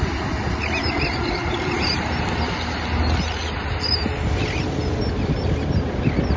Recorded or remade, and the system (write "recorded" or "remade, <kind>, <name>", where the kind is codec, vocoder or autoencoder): recorded